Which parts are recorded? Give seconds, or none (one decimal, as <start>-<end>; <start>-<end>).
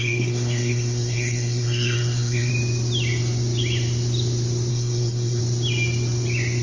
2.5-4.7; 5.4-6.6